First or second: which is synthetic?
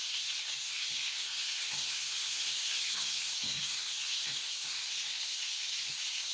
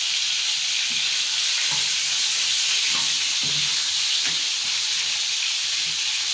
first